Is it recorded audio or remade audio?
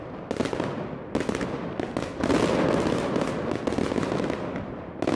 recorded